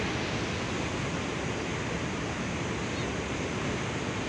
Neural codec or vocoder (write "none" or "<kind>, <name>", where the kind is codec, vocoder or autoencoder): none